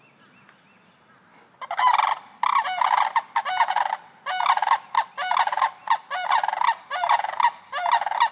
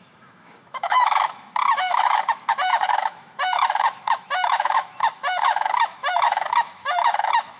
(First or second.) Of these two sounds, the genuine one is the first